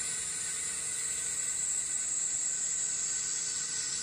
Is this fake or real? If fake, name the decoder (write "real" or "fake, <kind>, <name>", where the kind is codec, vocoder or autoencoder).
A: real